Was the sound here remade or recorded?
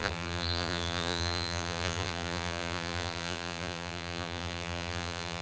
remade